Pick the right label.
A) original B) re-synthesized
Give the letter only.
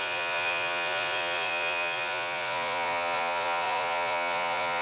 B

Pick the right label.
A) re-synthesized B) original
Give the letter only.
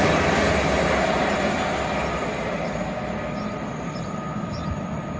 B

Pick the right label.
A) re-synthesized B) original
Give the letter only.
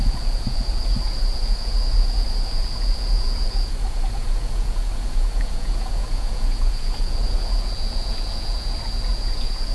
A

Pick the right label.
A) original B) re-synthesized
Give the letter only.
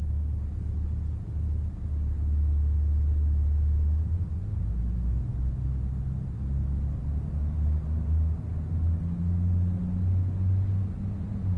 A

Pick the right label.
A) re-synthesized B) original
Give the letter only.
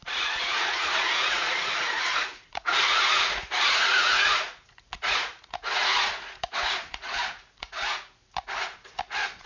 A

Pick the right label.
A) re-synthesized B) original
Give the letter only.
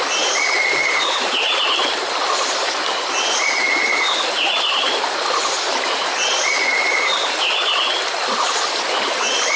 B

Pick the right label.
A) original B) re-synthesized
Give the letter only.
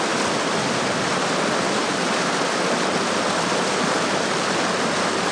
A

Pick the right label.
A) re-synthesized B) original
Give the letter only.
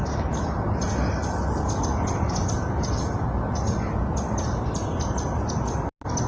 B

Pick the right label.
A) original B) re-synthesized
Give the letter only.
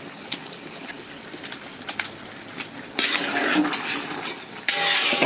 A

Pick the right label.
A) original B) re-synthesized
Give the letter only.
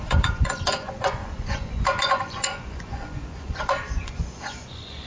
B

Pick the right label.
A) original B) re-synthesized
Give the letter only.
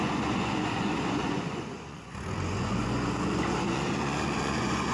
B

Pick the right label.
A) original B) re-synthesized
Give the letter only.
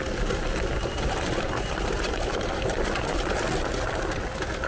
A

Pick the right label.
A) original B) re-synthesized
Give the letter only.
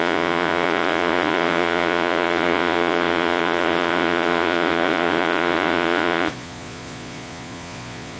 B